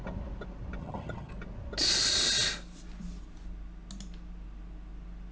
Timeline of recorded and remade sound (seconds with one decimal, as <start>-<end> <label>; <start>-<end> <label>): 0.0-0.8 recorded; 0.8-1.3 remade; 1.3-5.3 recorded